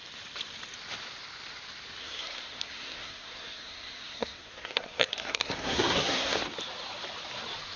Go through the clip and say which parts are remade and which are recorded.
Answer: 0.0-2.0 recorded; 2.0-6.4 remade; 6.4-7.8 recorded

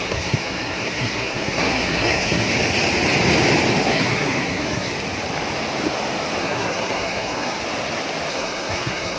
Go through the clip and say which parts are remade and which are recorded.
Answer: 0.0-2.5 remade; 2.5-3.8 recorded; 3.8-4.9 remade; 4.9-6.4 recorded; 6.4-7.6 remade; 7.6-8.3 recorded; 8.3-9.2 remade

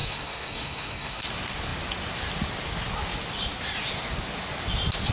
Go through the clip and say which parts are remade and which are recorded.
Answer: 0.0-1.2 remade; 1.2-5.1 recorded

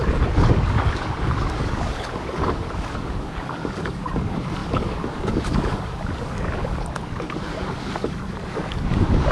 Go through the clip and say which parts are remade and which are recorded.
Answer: 0.0-9.3 remade

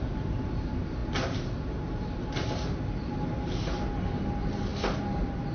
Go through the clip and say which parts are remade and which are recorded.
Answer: 0.0-5.5 recorded

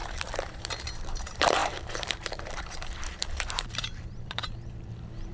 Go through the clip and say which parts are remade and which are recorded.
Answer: 0.0-5.3 remade

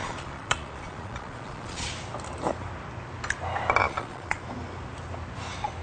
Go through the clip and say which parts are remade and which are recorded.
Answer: 0.0-1.9 remade; 1.9-3.8 recorded; 3.8-4.4 remade; 4.4-5.8 recorded